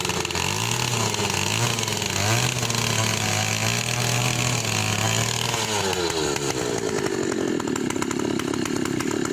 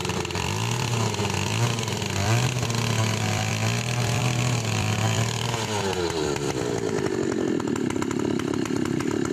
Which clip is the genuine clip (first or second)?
first